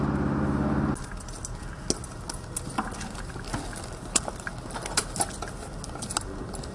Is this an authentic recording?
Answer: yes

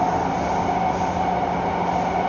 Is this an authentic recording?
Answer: yes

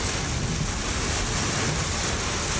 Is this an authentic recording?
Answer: yes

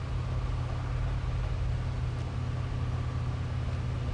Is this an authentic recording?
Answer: yes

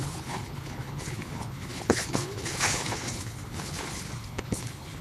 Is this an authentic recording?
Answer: no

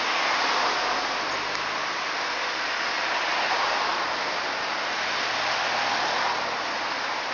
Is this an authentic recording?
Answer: yes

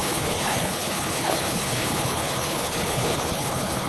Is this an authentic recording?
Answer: no